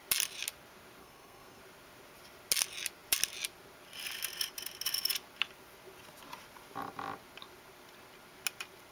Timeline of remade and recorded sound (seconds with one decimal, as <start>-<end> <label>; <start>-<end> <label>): 0.0-1.0 recorded; 1.0-1.6 remade; 1.6-8.9 recorded